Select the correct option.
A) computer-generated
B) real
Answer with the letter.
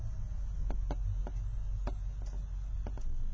B